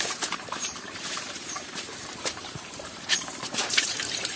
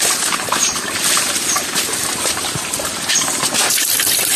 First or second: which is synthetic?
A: first